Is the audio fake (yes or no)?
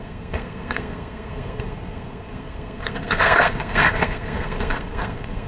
yes